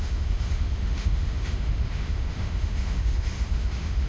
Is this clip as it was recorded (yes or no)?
no